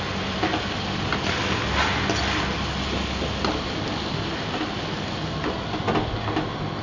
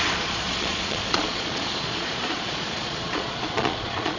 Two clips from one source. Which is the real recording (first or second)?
first